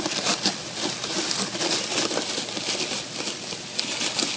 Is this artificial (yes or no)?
no